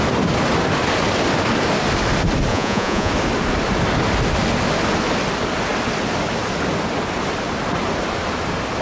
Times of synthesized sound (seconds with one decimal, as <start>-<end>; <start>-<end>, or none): 2.5-3.1